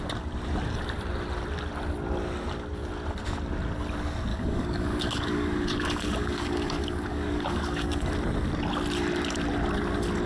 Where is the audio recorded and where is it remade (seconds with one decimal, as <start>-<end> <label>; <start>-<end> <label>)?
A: 0.0-4.3 recorded; 4.3-8.1 remade; 8.1-10.3 recorded